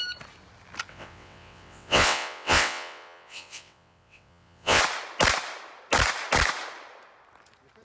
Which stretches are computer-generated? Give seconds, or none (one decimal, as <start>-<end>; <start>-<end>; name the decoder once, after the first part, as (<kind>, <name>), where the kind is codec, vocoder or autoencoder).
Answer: 0.9-4.8 (vocoder, WaveNeXt)